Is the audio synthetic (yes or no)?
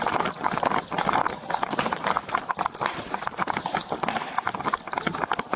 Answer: no